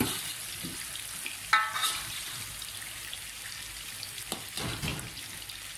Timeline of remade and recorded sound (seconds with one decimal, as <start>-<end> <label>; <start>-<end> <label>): 0.0-1.8 recorded; 1.8-2.3 remade; 2.3-5.8 recorded